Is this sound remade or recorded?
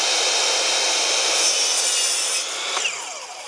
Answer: recorded